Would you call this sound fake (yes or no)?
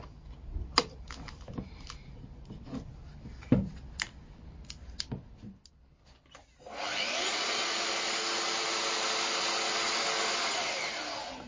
no